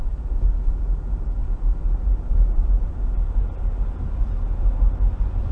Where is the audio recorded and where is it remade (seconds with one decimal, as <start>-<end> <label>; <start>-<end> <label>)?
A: 0.0-1.4 recorded; 1.4-3.7 remade; 3.7-5.5 recorded